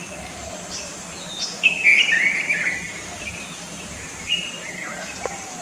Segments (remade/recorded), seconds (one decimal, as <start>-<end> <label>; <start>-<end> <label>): 0.0-1.9 recorded; 1.9-5.6 remade